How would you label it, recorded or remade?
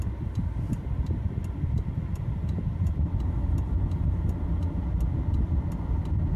recorded